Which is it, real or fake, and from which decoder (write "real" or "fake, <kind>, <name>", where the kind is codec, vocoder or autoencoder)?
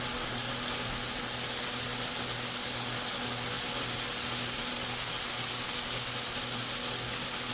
real